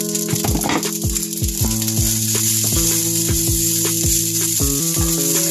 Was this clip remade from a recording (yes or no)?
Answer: no